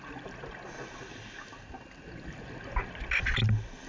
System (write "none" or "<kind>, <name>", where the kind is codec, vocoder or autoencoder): none